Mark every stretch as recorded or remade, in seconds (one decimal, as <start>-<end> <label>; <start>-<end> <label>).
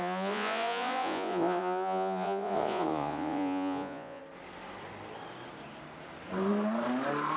0.0-4.2 remade; 4.2-7.4 recorded